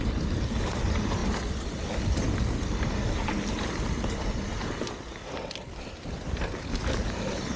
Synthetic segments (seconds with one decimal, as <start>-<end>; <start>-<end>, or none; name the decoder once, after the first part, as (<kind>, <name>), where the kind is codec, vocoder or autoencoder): none